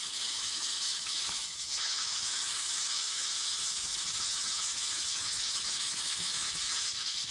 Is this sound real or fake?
fake